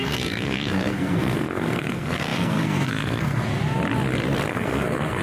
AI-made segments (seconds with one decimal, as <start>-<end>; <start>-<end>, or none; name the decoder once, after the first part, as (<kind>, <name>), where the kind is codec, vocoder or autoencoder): 0.0-3.5 (codec, SNAC); 4.5-5.2